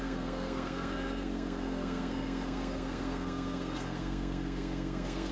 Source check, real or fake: fake